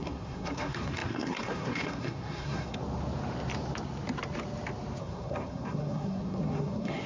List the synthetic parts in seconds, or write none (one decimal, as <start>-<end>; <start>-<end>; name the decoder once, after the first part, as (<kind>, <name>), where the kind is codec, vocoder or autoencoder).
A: 0.0-2.8 (codec, SNAC); 5.0-7.1